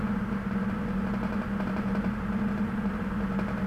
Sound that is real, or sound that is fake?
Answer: real